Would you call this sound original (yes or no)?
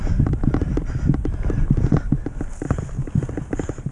yes